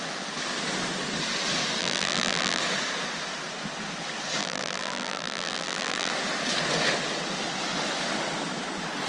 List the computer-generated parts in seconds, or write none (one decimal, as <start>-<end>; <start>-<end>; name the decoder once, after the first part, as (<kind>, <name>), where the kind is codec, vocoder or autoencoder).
1.8-2.6 (vocoder, BigVGAN v2); 4.4-6.1